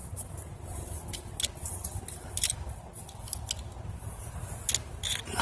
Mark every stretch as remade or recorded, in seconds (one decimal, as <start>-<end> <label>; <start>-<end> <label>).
0.0-5.4 recorded